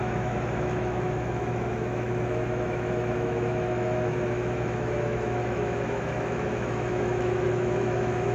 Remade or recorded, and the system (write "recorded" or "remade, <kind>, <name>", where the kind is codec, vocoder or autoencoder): remade, autoencoder, DAC-VAE